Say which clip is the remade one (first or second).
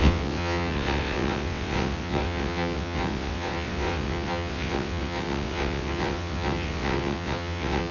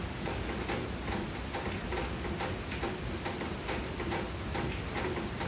first